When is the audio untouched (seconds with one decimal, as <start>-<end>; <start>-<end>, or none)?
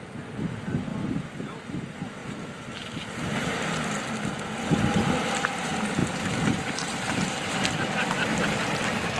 0.0-6.0; 8.6-9.2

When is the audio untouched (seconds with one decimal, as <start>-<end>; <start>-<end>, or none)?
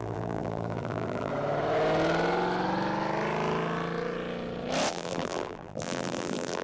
1.3-4.9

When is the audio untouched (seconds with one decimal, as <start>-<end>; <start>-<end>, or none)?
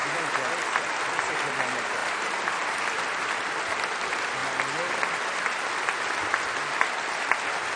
0.5-2.0; 2.8-7.8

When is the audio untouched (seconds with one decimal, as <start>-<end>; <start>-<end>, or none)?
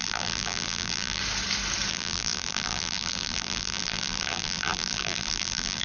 1.2-1.9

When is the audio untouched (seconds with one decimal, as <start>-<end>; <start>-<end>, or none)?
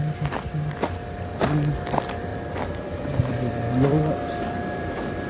0.0-2.3